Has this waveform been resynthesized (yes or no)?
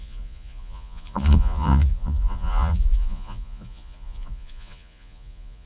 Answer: yes